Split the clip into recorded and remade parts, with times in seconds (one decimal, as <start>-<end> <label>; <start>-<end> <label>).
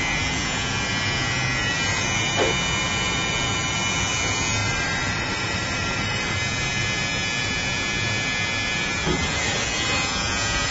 0.0-4.6 recorded; 4.6-6.4 remade; 6.4-10.7 recorded